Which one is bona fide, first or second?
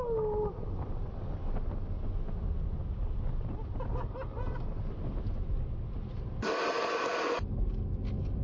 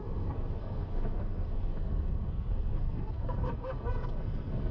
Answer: first